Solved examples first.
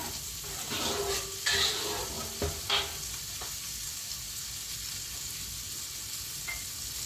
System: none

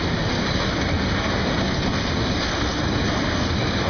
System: none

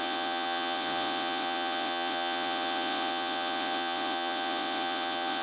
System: vocoder, WaveNeXt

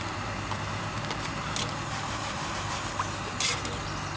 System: none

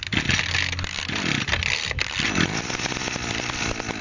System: none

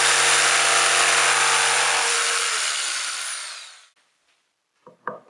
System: none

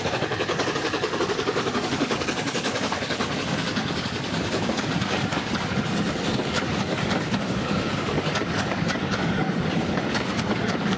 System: codec, DAC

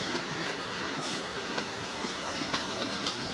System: codec, SNAC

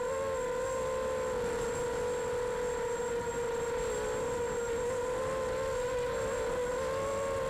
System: none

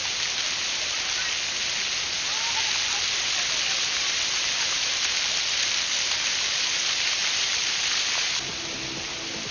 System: none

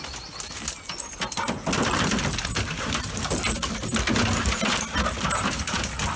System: none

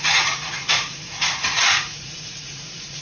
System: vocoder, Vocos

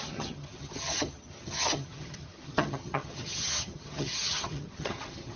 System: vocoder, HiFi-GAN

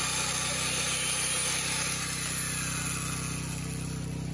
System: none